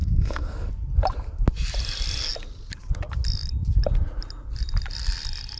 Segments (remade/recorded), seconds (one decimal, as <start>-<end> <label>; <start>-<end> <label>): 0.0-0.7 remade; 0.7-5.6 recorded